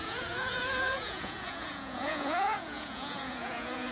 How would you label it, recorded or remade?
remade